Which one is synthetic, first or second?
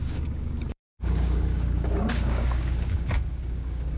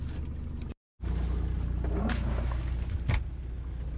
first